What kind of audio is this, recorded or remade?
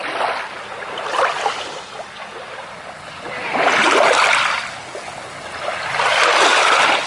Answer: recorded